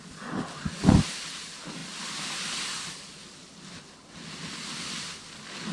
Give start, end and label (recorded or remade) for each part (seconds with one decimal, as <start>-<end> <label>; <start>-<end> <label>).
0.0-5.7 recorded

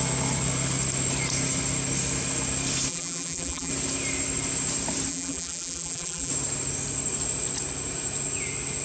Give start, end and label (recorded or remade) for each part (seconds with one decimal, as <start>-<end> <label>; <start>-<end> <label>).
0.0-2.9 recorded; 2.9-3.7 remade; 3.7-5.1 recorded; 5.1-6.3 remade; 6.3-8.8 recorded

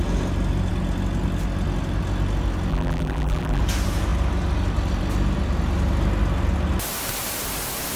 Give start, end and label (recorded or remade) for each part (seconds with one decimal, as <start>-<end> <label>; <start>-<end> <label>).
0.0-2.7 recorded; 2.7-3.6 remade; 3.6-8.0 recorded

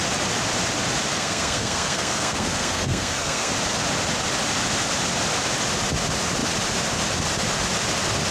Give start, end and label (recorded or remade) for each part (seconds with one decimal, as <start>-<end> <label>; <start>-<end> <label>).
0.0-1.1 recorded; 1.1-3.5 remade; 3.5-8.3 recorded

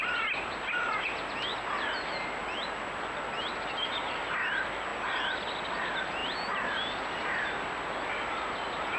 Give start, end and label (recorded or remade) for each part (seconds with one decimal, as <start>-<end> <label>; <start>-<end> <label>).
0.0-9.0 recorded

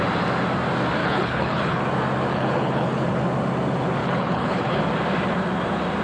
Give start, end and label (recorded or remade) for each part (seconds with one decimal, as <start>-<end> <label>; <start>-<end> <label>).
0.0-1.0 recorded; 1.0-1.8 remade; 1.8-2.3 recorded; 2.3-3.2 remade; 3.2-4.0 recorded; 4.0-4.8 remade; 4.8-6.0 recorded

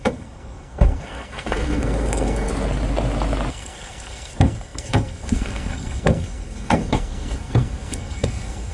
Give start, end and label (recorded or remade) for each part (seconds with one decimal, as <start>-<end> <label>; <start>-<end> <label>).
0.0-2.5 remade; 2.5-3.5 recorded; 3.5-8.7 remade